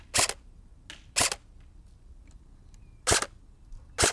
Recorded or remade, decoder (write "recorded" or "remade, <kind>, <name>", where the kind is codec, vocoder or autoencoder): recorded